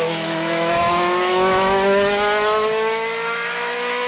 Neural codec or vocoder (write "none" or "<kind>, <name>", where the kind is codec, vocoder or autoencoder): autoencoder, DAC-VAE